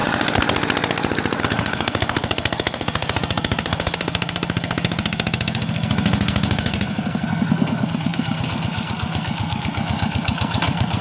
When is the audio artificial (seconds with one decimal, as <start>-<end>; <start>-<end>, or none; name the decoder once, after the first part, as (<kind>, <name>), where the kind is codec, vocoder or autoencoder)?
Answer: 1.4-11.0 (codec, SNAC)

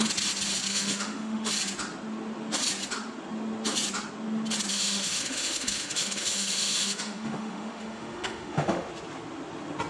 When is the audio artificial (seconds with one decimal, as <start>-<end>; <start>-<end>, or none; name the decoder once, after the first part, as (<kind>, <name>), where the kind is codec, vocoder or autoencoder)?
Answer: 0.7-1.5 (autoencoder, DAC-VAE); 4.7-8.9

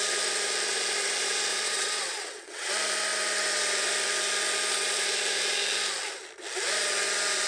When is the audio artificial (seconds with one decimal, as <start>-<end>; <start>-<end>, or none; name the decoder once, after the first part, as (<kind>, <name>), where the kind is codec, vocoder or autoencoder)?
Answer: 1.5-2.7 (vocoder, WaveNeXt)